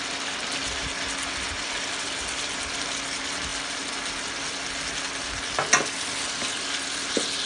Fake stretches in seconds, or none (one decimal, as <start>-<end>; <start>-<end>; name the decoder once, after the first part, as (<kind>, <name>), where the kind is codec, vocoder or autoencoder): none